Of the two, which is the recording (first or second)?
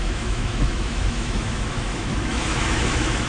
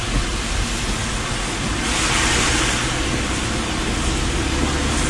second